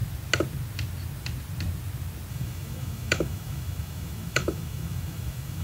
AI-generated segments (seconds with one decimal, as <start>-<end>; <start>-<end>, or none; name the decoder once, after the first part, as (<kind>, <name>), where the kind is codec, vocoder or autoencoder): 2.3-5.6 (autoencoder, DAC-VAE)